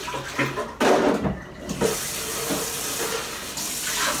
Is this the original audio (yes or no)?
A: yes